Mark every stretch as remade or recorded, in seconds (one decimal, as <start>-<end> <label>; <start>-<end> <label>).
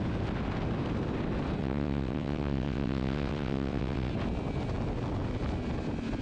0.0-1.6 recorded; 1.6-4.1 remade; 4.1-6.2 recorded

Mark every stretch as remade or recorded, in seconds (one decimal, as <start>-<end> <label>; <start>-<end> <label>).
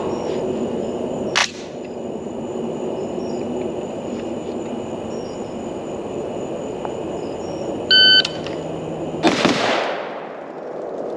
0.0-1.4 recorded; 1.4-4.7 remade; 4.7-6.0 recorded; 6.0-6.5 remade; 6.5-11.2 recorded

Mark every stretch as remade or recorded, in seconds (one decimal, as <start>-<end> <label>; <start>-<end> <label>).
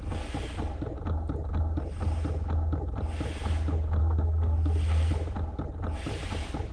0.0-4.0 recorded; 4.0-5.1 remade; 5.1-6.7 recorded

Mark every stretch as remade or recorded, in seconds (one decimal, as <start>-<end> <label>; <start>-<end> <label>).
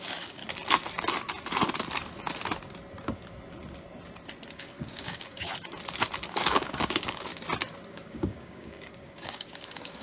0.0-0.4 remade; 0.4-4.5 recorded; 4.5-5.5 remade; 5.5-6.3 recorded; 6.3-7.3 remade; 7.3-7.9 recorded; 7.9-10.0 remade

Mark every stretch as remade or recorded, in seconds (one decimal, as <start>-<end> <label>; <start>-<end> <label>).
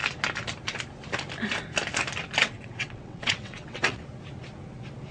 0.0-2.4 recorded; 2.4-4.0 remade; 4.0-5.1 recorded